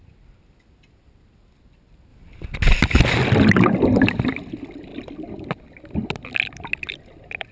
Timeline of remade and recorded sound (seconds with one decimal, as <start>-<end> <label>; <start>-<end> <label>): 0.0-4.9 recorded; 4.9-5.6 remade; 5.6-7.5 recorded